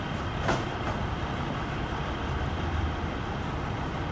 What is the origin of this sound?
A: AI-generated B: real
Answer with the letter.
A